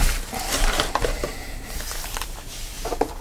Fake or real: fake